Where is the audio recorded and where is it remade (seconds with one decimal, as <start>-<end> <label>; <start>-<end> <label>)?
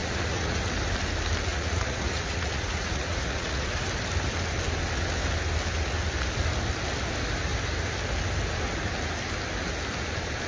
0.0-0.6 remade; 0.6-1.5 recorded; 1.5-3.8 remade; 3.8-10.5 recorded